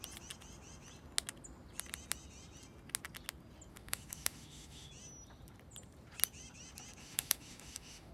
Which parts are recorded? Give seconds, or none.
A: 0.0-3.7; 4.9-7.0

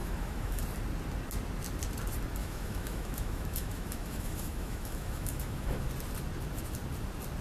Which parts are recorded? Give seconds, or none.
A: 0.6-2.4; 5.9-7.4

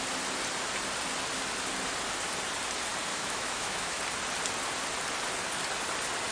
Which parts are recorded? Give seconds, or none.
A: 0.0-3.1; 4.0-6.3

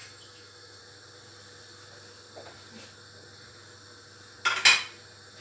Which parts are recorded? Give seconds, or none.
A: 0.8-5.4

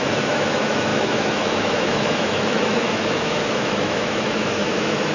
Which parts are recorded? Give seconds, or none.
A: none

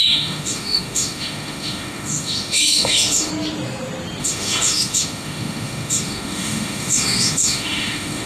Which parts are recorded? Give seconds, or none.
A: 3.3-4.2